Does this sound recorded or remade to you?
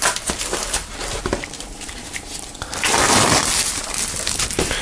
recorded